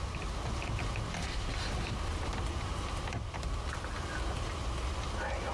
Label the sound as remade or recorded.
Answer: recorded